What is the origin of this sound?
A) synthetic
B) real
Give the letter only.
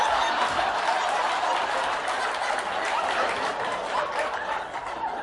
B